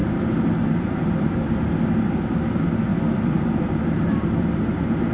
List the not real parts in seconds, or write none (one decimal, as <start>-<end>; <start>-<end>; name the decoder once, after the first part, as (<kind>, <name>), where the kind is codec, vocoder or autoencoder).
none